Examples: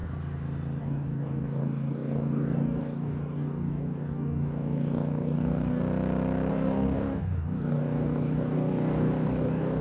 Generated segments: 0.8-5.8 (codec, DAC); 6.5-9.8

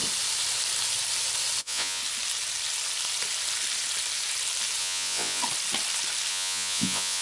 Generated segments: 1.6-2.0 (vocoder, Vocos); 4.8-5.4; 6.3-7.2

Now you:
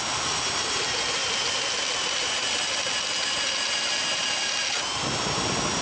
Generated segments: none

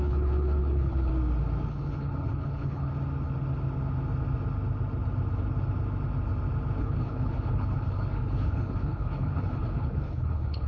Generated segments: 0.0-1.1 (codec, HILCodec); 1.7-2.9; 6.8-10.7